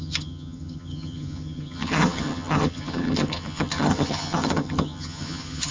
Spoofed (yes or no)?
yes